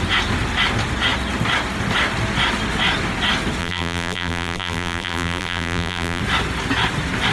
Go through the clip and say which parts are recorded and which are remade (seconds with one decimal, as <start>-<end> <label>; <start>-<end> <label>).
0.0-3.6 recorded; 3.6-6.2 remade; 6.2-7.3 recorded